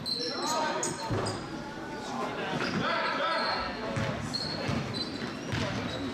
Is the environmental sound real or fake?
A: real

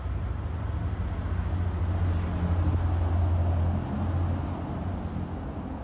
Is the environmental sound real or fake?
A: real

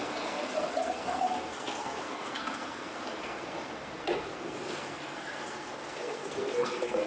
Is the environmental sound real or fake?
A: fake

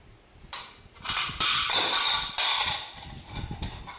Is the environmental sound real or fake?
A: real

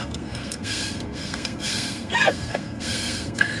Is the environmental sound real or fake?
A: fake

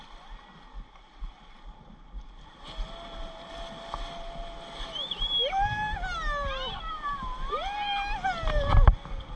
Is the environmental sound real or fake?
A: real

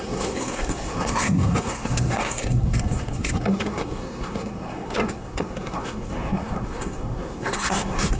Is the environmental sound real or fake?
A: fake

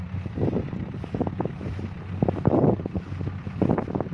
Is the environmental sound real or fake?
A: real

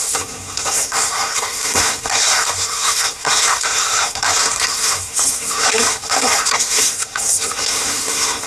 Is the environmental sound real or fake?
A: fake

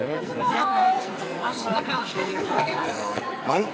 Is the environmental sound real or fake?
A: fake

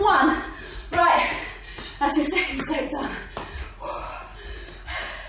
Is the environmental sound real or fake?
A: real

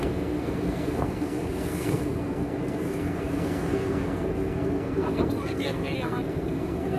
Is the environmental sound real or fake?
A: fake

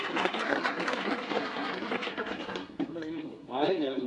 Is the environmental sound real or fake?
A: fake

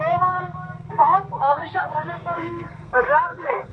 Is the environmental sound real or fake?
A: fake